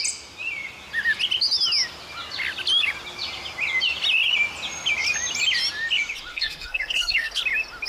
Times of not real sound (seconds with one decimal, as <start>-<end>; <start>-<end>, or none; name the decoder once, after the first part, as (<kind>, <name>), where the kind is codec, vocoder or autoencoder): 6.3-7.4 (codec, SNAC)